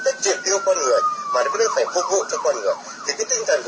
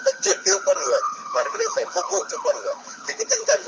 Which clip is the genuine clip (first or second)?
first